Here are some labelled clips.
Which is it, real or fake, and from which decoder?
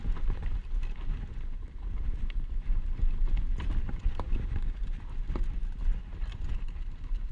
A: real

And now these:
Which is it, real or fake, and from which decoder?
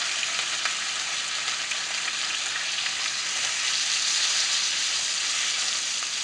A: real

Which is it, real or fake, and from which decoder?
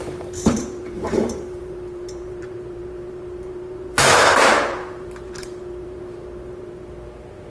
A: fake, vocoder, BigVGAN v2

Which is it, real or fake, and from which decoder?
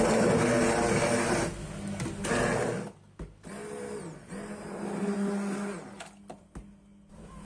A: real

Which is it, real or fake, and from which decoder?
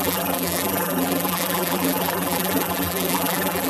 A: fake, vocoder, BigVGAN v2